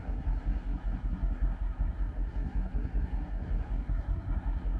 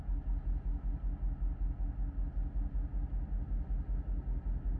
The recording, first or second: second